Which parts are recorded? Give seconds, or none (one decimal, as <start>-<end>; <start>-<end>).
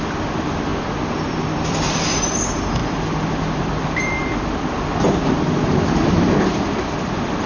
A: 0.7-1.5